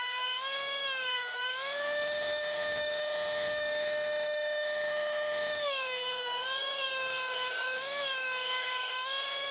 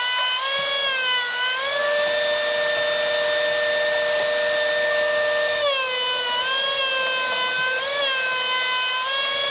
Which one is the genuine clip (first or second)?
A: second